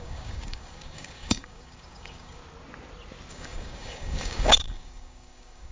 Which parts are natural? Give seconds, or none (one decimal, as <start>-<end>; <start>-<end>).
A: 2.4-3.3